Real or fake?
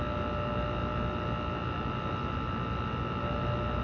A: real